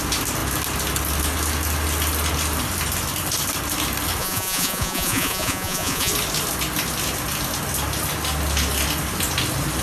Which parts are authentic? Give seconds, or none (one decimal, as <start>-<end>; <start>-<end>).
0.0-4.2; 6.1-9.8